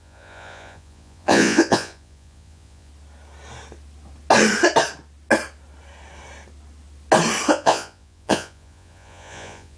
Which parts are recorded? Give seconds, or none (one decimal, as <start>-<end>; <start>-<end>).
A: 2.9-7.5